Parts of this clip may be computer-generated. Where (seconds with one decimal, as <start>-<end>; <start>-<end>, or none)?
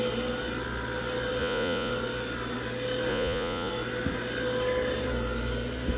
1.4-1.9; 3.1-3.7